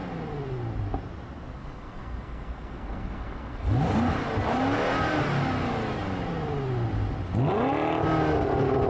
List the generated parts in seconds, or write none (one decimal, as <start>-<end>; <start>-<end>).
1.6-3.7